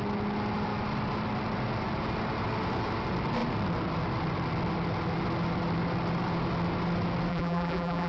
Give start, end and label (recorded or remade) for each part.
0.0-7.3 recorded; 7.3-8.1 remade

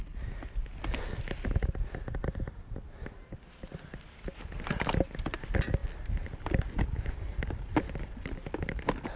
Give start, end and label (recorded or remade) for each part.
0.0-9.2 recorded

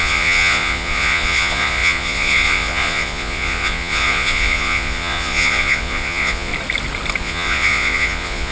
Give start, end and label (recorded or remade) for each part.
0.0-6.5 remade; 6.5-7.2 recorded; 7.2-8.5 remade

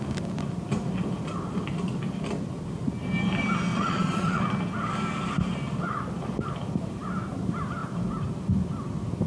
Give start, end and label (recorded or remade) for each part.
0.0-3.7 recorded; 3.7-4.4 remade; 4.4-9.3 recorded

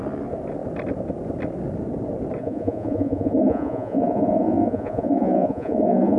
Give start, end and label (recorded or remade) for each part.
0.0-2.4 recorded; 2.4-6.2 remade

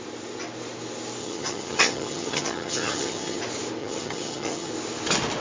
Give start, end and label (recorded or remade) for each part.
0.0-1.2 recorded; 1.2-3.4 remade; 3.4-3.8 recorded; 3.8-4.7 remade; 4.7-5.4 recorded